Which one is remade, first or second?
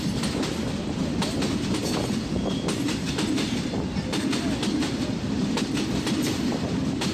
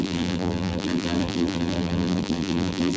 second